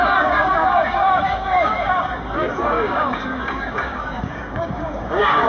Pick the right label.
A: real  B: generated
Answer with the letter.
B